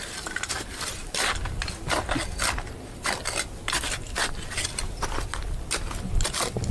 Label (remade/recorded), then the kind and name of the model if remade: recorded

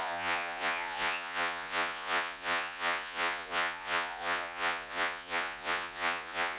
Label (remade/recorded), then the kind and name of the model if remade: remade, vocoder, Vocos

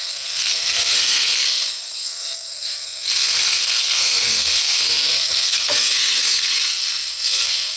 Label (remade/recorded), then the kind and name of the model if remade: remade, codec, SNAC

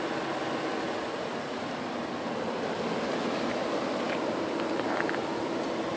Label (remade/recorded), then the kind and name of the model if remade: recorded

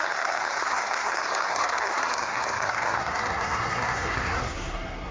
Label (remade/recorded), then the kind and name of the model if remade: remade, codec, SNAC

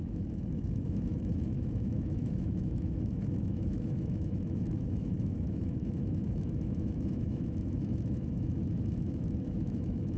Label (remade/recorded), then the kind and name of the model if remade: remade, autoencoder, DAC-VAE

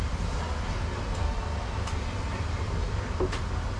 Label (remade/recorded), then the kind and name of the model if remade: recorded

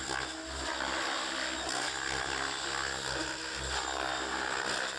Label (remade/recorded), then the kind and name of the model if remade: recorded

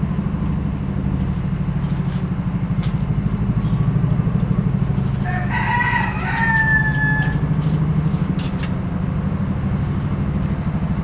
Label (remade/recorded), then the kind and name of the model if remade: recorded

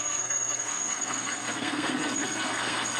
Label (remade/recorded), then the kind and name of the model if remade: remade, codec, SNAC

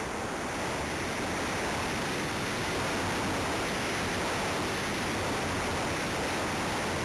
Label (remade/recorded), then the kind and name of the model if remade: recorded